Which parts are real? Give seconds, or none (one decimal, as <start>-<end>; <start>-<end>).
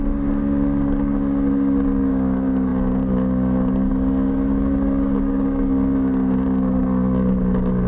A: none